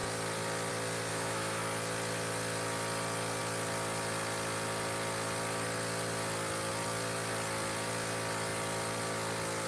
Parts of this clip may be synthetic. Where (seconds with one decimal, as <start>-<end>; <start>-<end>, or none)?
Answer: 1.1-1.6